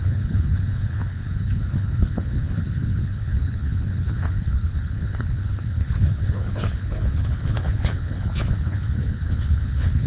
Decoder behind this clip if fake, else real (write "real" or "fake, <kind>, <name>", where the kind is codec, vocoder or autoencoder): fake, codec, HILCodec